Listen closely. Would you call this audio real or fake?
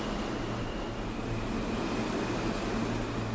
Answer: real